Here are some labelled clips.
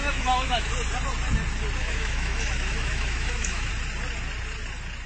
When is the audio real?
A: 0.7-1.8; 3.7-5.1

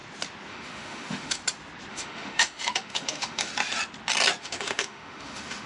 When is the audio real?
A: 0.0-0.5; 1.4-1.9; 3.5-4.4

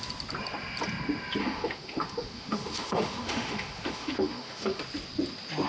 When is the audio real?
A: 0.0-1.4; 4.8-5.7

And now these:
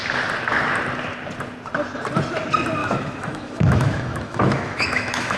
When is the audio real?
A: 0.0-2.8

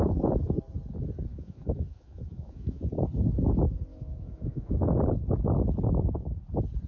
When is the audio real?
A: 0.0-1.3; 2.8-3.9; 4.9-6.9

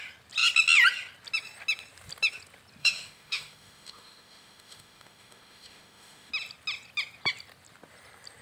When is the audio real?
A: 0.0-2.8; 6.3-8.4

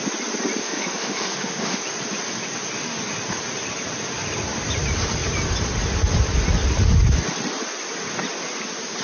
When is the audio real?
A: 0.0-0.6; 1.8-9.0

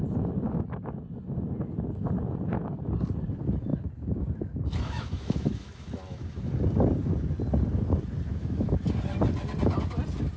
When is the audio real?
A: 0.0-3.7; 6.5-8.3; 8.8-10.4